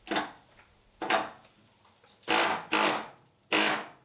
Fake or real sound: real